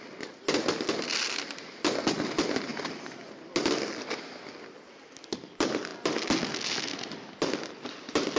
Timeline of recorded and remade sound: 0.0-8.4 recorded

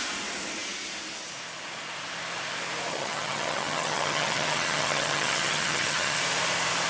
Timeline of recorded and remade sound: 0.0-2.9 recorded; 2.9-6.2 remade; 6.2-6.9 recorded

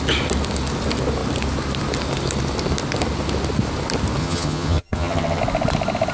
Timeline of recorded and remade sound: 0.0-4.2 recorded; 4.2-5.4 remade; 5.4-6.1 recorded

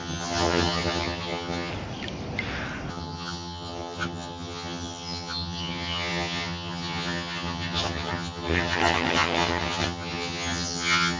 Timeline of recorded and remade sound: 0.0-1.7 remade; 1.7-2.9 recorded; 2.9-11.2 remade

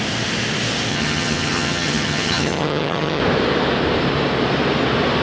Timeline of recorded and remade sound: 0.0-0.9 recorded; 0.9-3.2 remade; 3.2-5.2 recorded

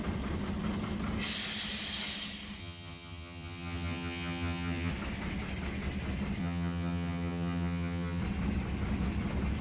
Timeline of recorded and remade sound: 0.0-2.6 recorded; 2.6-4.9 remade; 4.9-6.4 recorded; 6.4-8.2 remade; 8.2-9.6 recorded